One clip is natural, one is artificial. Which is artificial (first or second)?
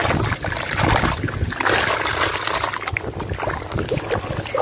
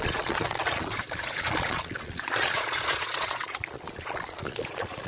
second